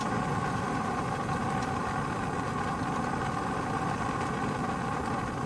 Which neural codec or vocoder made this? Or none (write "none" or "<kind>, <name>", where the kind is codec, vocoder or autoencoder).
vocoder, BigVGAN v2